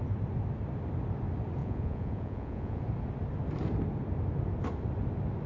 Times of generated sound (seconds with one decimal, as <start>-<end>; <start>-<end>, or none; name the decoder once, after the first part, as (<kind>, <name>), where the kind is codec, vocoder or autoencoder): 1.6-2.8 (vocoder, Vocos)